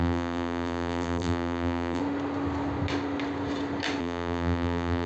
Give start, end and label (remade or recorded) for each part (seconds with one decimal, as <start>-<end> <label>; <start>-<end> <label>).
0.0-2.0 remade; 2.0-4.0 recorded; 4.0-5.1 remade